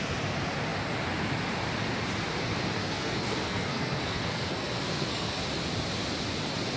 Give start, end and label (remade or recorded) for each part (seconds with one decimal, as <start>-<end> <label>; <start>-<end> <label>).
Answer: 0.0-2.8 recorded; 2.8-5.4 remade; 5.4-6.8 recorded